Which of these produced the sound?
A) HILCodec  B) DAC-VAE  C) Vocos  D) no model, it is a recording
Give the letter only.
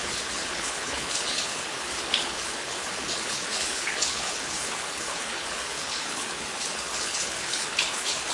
A